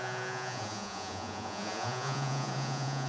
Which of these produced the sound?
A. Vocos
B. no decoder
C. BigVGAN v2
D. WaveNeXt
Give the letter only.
A